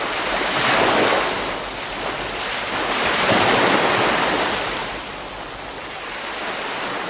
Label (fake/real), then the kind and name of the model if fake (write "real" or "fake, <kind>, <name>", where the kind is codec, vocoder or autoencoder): real